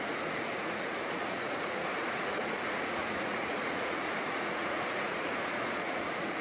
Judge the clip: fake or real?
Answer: fake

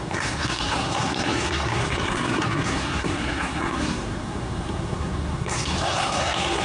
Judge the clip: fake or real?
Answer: fake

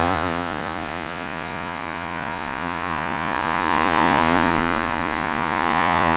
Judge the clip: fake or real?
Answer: fake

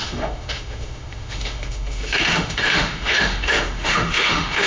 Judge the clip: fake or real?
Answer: fake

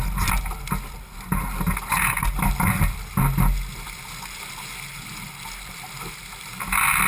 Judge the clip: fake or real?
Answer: real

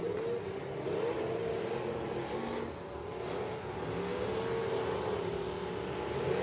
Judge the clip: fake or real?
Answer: real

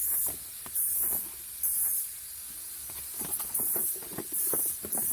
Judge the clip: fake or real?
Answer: real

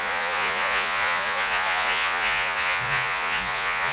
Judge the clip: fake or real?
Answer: fake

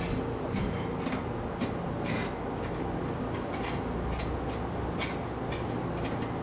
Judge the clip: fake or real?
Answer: real